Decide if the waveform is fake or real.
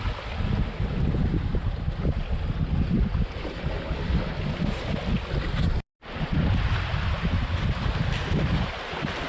real